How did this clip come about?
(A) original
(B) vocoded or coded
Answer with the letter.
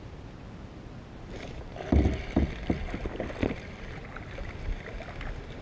A